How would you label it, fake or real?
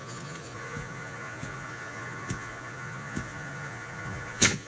fake